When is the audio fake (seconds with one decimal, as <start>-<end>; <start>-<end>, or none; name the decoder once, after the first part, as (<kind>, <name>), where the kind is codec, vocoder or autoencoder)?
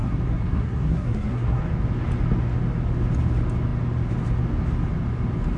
0.0-1.6 (codec, SNAC)